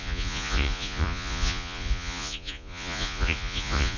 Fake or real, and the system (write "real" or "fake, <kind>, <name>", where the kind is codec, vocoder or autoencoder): fake, vocoder, Vocos